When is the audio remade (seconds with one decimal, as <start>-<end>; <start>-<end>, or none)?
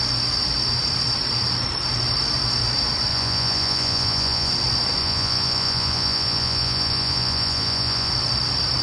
3.1-4.5; 5.0-8.1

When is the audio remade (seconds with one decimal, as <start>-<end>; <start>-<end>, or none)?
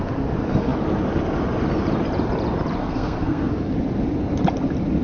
2.8-3.5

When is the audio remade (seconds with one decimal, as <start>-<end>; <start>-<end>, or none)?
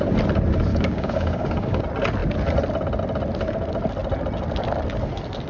0.7-1.8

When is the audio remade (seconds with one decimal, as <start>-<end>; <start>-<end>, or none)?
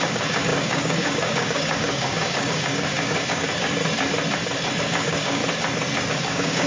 0.0-3.8; 4.8-5.4; 6.1-6.7